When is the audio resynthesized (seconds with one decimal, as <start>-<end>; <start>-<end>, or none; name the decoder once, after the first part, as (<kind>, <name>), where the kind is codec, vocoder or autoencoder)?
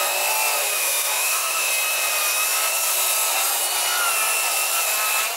0.6-1.7 (autoencoder, DAC-VAE)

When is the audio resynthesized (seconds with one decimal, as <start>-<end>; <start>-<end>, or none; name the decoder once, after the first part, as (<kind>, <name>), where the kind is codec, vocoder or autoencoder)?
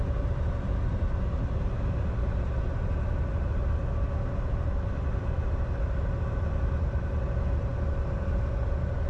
none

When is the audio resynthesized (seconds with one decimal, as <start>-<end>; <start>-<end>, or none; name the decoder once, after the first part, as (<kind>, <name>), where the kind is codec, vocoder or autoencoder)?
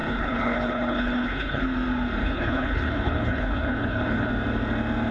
0.0-1.6 (codec, HILCodec); 2.2-4.3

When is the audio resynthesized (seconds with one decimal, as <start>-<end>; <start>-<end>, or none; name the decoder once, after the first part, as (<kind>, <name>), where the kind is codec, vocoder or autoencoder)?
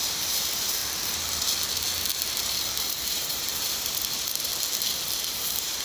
0.0-0.8 (vocoder, BigVGAN v2); 2.7-4.5; 5.2-5.8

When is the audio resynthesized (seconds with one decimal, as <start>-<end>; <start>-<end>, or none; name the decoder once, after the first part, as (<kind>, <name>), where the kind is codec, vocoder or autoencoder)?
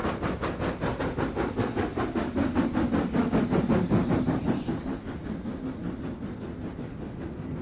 none